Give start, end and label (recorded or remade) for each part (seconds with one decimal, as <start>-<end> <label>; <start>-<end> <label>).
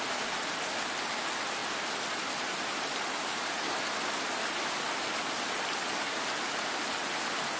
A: 0.0-1.6 recorded; 1.6-6.0 remade; 6.0-7.6 recorded